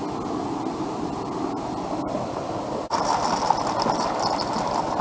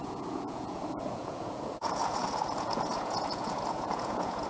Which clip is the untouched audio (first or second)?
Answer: first